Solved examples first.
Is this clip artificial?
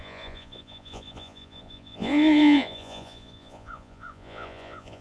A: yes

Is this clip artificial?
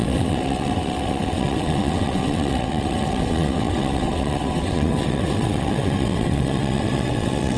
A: yes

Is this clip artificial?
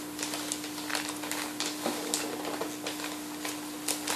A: no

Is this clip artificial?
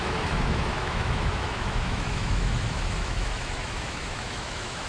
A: yes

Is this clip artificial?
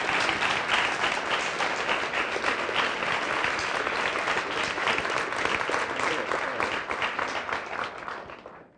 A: no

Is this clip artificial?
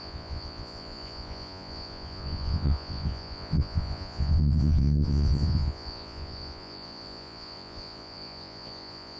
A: yes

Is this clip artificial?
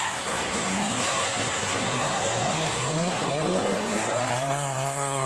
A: yes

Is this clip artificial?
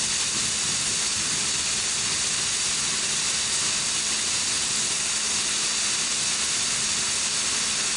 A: no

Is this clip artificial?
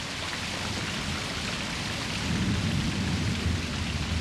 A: no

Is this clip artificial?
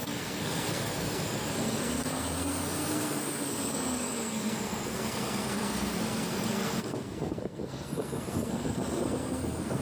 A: yes